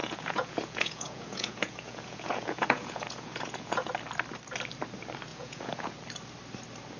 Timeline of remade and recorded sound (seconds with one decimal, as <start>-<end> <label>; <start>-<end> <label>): 0.0-3.9 remade; 3.9-5.3 recorded; 5.3-5.9 remade; 5.9-7.0 recorded